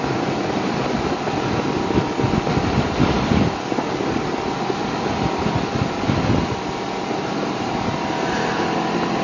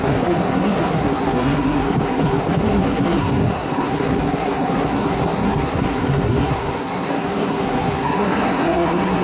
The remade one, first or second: second